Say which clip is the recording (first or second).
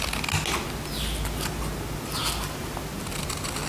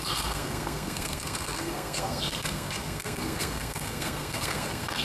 first